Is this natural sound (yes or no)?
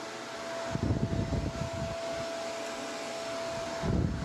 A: yes